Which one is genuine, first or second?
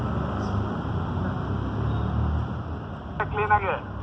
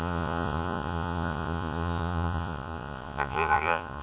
first